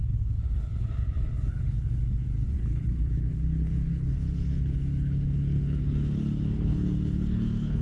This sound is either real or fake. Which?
fake